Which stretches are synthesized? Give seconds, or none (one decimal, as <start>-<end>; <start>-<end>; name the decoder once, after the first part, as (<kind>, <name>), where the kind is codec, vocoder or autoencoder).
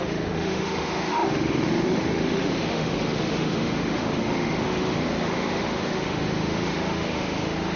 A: 0.0-7.8 (autoencoder, DAC-VAE)